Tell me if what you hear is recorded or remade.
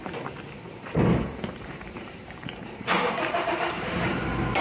remade